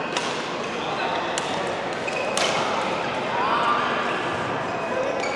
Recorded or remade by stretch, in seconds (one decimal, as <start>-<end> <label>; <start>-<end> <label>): 0.0-5.4 recorded